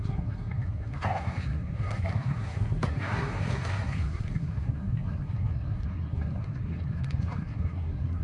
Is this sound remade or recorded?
remade